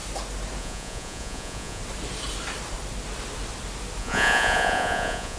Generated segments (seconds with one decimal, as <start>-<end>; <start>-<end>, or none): 0.6-1.8; 4.0-5.4